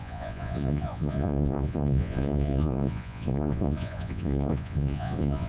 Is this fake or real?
fake